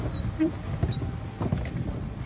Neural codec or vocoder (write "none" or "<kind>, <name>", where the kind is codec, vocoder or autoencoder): none